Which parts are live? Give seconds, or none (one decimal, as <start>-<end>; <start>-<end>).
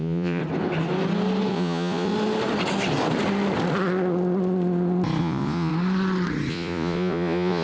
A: 0.4-1.5; 2.1-5.2; 5.7-6.5